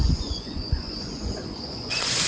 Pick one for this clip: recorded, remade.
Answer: remade